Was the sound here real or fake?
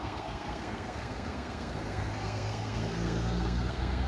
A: fake